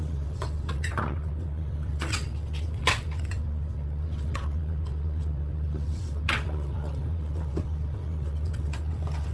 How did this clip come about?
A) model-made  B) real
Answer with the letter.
A